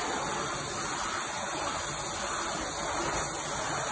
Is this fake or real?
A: real